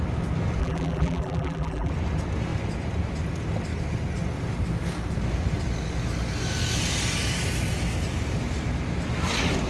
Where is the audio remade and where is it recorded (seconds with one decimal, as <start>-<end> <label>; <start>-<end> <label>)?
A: 0.0-0.6 recorded; 0.6-1.9 remade; 1.9-9.7 recorded